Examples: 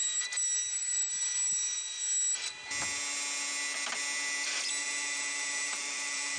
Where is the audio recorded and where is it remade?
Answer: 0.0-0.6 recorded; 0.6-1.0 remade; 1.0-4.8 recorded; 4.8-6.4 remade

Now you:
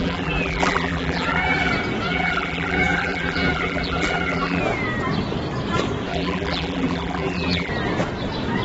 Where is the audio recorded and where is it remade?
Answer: 0.0-1.7 remade; 1.7-2.1 recorded; 2.1-4.6 remade; 4.6-6.1 recorded; 6.1-7.7 remade; 7.7-8.6 recorded

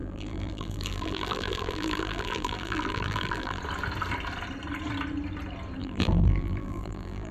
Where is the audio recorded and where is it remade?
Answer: 0.0-3.6 remade; 3.6-5.8 recorded; 5.8-7.3 remade

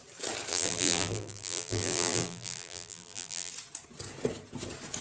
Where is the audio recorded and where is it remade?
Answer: 0.0-0.5 recorded; 0.5-3.5 remade; 3.5-5.0 recorded

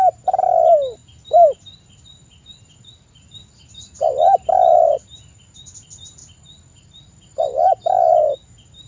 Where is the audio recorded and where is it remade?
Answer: 0.0-4.0 recorded; 4.0-5.8 remade; 5.8-6.2 recorded; 6.2-8.2 remade; 8.2-8.9 recorded